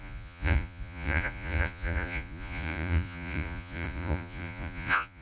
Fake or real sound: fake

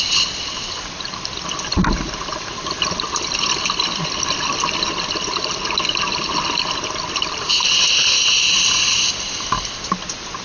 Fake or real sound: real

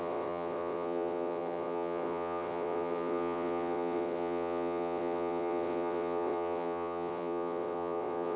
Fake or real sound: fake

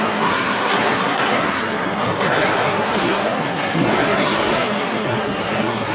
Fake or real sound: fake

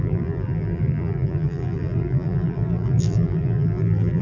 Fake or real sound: fake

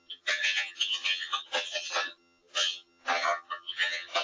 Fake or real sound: fake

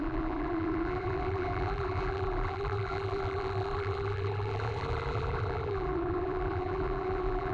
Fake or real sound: fake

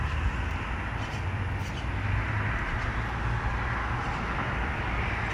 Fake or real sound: real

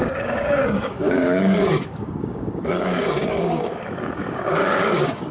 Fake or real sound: fake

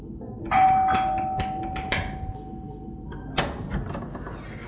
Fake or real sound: real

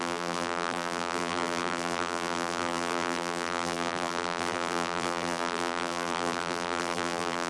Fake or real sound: fake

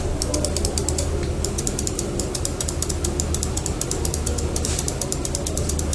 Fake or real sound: real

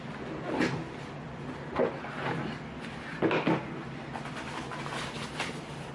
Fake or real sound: real